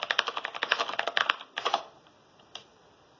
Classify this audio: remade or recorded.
recorded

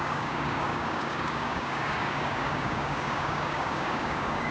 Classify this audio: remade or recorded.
remade